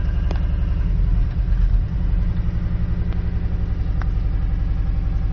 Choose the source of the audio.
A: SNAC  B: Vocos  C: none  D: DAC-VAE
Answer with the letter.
C